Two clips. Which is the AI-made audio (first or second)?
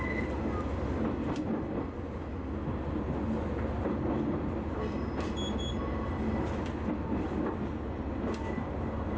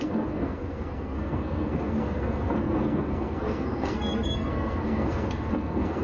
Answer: second